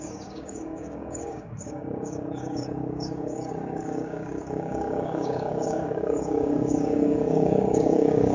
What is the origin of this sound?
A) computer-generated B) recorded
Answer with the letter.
A